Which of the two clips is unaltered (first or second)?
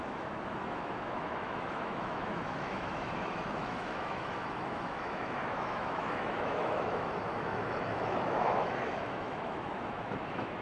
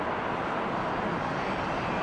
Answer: second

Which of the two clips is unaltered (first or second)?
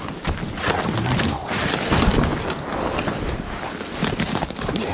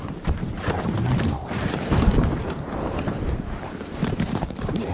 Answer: first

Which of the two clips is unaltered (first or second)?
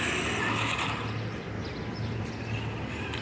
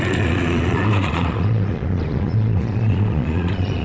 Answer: first